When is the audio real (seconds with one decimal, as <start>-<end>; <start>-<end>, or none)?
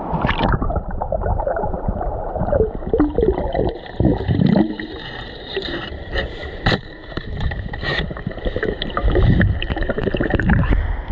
none